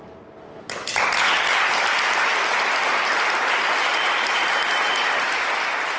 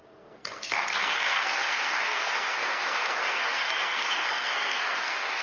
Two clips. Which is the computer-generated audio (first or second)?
second